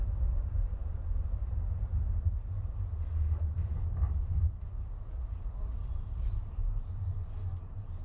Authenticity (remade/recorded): recorded